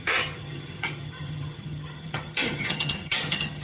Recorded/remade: remade